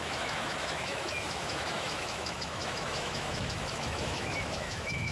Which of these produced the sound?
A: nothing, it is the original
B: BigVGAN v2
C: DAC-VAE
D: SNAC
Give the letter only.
C